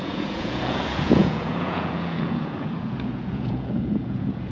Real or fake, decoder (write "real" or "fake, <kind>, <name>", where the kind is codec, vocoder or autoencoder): fake, vocoder, Vocos